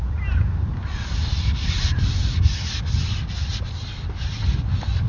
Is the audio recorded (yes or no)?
yes